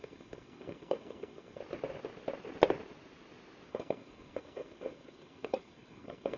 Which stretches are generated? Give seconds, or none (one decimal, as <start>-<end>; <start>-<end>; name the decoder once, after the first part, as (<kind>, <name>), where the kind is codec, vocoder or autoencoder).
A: 0.0-1.6 (codec, SNAC); 3.7-6.4